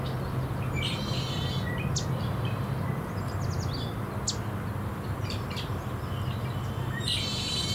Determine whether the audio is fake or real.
real